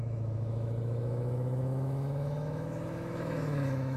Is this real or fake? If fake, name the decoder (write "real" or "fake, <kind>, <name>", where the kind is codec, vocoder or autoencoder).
fake, autoencoder, DAC-VAE